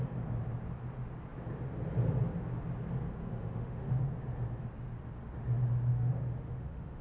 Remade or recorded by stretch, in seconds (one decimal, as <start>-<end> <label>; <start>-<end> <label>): 0.0-3.2 recorded; 3.2-4.0 remade; 4.0-5.9 recorded; 5.9-7.0 remade